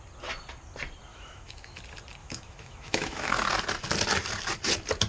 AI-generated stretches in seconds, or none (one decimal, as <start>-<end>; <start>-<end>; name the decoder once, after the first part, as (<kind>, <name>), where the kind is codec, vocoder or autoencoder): 1.1-1.8 (autoencoder, DAC-VAE); 2.2-3.3